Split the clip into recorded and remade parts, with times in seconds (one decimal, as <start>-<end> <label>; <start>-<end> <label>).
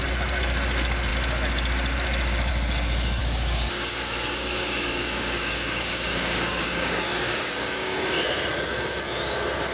0.0-3.2 recorded; 3.2-8.2 remade; 8.2-9.7 recorded